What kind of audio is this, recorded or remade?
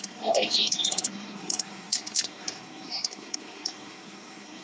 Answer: remade